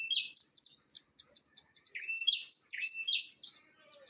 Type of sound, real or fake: real